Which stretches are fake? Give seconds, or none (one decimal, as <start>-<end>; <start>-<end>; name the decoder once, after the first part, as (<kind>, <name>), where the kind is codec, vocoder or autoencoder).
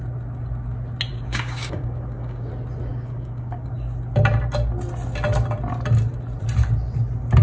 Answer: 1.1-2.5 (codec, DAC); 2.9-3.7